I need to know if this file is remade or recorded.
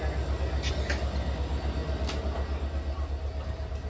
recorded